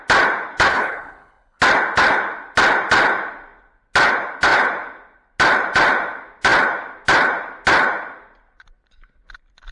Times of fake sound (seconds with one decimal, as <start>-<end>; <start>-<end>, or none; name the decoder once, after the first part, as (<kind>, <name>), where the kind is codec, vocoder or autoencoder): 0.7-1.6 (codec, HILCodec)